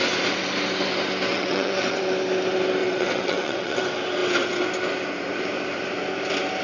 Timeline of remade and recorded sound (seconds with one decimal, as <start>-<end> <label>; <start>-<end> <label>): 0.0-1.3 recorded; 1.3-2.0 remade; 2.0-2.8 recorded; 2.8-3.8 remade; 3.8-6.6 recorded